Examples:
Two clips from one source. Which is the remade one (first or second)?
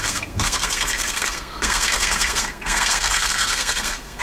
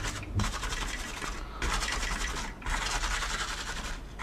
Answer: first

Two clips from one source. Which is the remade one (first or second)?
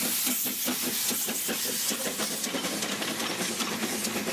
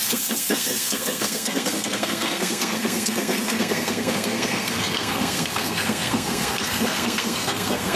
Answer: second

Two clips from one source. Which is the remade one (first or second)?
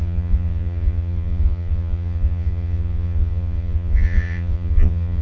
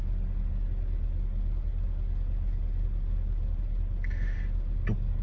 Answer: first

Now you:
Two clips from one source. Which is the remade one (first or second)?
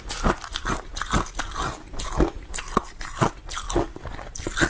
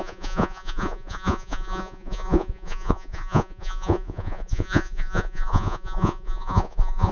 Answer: second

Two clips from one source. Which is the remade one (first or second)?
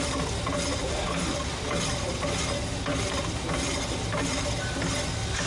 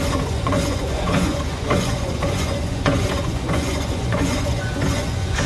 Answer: second